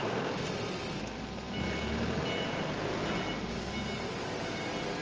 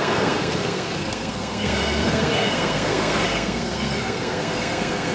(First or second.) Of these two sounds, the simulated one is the second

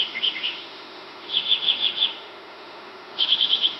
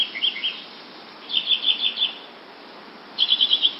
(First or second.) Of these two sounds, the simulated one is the first